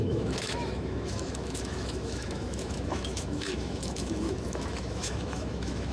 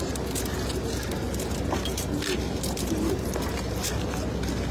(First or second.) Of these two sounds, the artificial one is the first